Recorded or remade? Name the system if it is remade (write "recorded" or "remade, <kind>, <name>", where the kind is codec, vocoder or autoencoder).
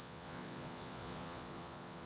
remade, vocoder, Vocos